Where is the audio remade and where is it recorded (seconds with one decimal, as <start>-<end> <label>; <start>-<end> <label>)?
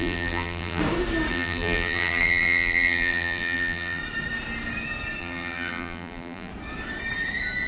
0.0-0.8 remade; 0.8-1.3 recorded; 1.3-4.0 remade; 4.0-5.2 recorded; 5.2-6.5 remade; 6.5-7.7 recorded